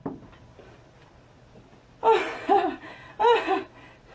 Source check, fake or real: real